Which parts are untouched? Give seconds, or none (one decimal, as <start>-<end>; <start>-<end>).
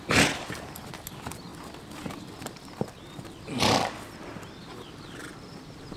0.0-6.0